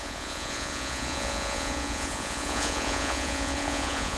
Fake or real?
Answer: fake